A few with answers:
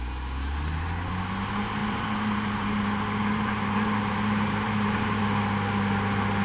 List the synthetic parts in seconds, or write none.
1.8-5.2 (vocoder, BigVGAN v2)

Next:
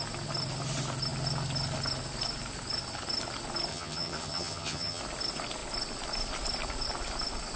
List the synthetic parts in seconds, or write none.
3.7-5.0 (vocoder, HiFi-GAN)